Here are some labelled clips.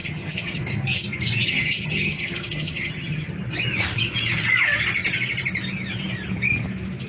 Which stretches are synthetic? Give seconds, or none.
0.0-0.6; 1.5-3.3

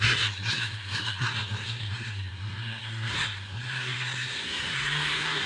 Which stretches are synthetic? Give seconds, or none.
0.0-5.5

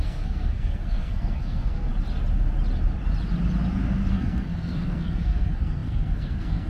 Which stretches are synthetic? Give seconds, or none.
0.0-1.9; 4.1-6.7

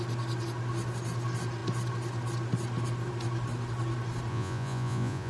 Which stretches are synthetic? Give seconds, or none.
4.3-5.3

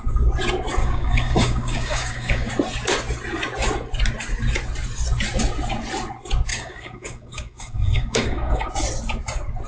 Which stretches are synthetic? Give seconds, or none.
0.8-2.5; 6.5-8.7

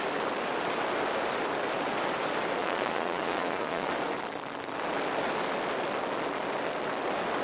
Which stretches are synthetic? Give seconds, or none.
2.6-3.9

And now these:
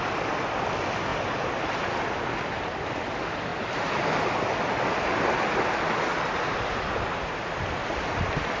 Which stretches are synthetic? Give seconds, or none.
none